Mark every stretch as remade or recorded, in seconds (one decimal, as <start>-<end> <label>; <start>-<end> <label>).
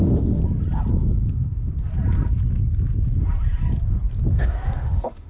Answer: 0.0-0.4 remade; 0.4-1.3 recorded; 1.3-1.9 remade; 1.9-4.3 recorded; 4.3-5.3 remade